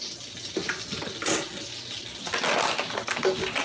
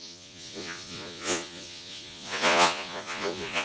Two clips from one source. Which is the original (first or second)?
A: first